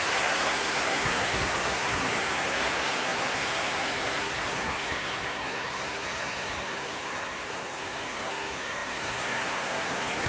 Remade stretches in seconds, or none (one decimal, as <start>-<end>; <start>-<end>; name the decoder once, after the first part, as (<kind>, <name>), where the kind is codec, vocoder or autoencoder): 0.0-10.3 (codec, SNAC)